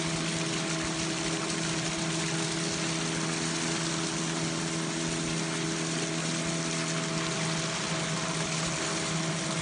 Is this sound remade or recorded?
recorded